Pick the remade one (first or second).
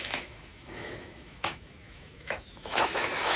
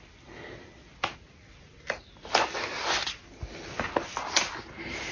first